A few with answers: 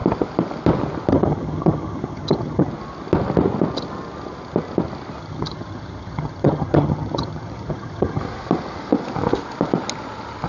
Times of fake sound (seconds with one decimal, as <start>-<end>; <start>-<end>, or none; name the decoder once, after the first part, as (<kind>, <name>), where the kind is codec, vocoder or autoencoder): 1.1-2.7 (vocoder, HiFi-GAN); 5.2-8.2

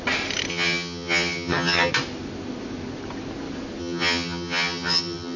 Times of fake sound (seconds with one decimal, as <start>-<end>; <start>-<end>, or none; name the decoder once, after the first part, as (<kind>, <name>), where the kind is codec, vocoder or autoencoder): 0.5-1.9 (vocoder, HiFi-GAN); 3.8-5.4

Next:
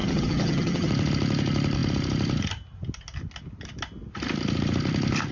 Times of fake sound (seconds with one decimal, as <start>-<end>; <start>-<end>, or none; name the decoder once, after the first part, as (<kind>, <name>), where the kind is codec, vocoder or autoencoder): 0.0-0.9 (vocoder, HiFi-GAN)

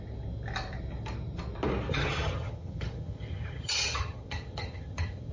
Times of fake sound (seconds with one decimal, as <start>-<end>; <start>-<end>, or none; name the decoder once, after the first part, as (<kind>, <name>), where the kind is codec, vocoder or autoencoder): 1.9-5.3 (vocoder, HiFi-GAN)

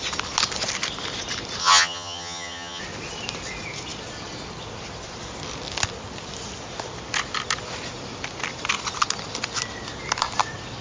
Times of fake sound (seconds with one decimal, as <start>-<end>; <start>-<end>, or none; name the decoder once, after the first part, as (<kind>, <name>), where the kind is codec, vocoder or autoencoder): 1.6-2.8 (vocoder, HiFi-GAN)

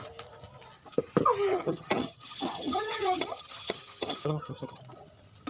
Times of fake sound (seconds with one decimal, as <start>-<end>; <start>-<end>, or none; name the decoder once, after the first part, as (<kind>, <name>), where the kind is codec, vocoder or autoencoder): 1.5-4.8 (vocoder, HiFi-GAN)

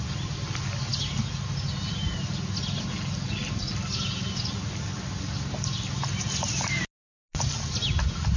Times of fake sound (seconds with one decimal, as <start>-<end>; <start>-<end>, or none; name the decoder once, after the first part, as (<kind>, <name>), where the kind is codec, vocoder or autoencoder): none